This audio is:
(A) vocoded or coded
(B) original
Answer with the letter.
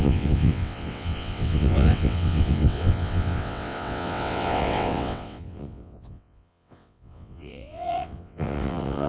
A